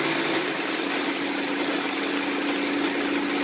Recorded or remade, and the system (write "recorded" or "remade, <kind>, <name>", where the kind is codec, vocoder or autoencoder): recorded